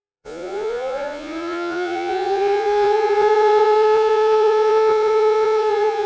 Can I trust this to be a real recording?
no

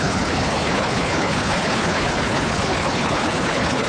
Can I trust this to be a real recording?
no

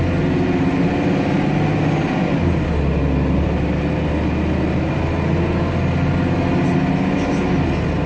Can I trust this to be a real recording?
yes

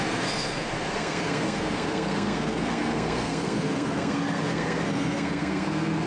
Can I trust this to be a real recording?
no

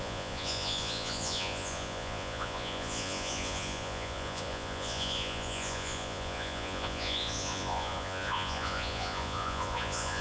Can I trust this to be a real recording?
no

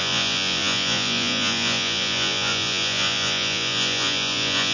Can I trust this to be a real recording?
no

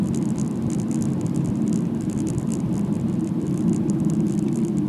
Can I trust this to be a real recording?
yes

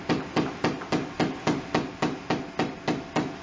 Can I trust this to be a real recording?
yes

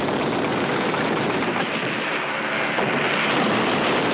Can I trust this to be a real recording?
no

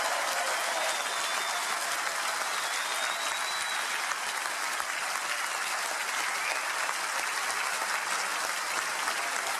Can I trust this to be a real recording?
yes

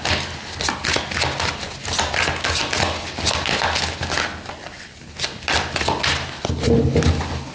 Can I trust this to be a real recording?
yes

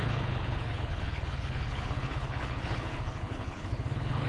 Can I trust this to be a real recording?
no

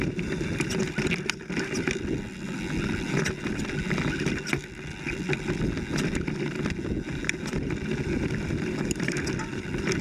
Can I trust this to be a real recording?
yes